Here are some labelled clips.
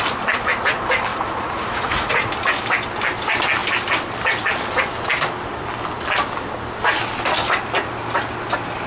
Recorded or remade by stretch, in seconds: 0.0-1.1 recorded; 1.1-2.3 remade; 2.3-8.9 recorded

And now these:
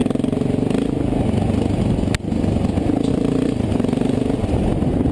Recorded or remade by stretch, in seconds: 0.0-3.1 recorded; 3.1-5.1 remade

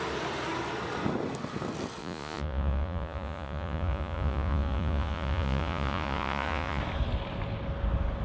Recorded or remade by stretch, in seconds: 0.0-2.0 recorded; 2.0-6.8 remade; 6.8-8.2 recorded

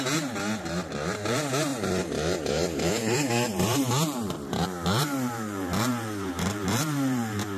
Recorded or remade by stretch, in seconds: 0.0-7.6 remade

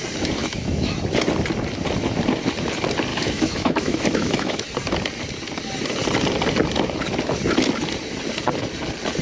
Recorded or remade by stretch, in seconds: 0.0-0.4 recorded; 0.4-1.0 remade; 1.0-3.1 recorded; 3.1-4.6 remade; 4.6-9.2 recorded

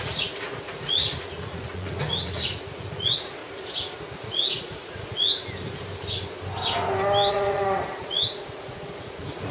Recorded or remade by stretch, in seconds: 0.0-3.4 remade; 3.4-4.0 recorded; 4.0-5.3 remade; 5.3-7.3 recorded; 7.3-9.5 remade

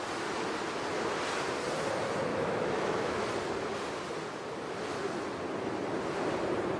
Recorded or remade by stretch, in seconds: 0.0-2.3 recorded; 2.3-3.2 remade; 3.2-6.8 recorded